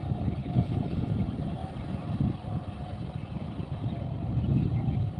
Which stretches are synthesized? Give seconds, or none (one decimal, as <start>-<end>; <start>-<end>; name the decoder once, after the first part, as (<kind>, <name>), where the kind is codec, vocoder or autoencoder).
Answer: 0.4-1.0 (codec, HILCodec)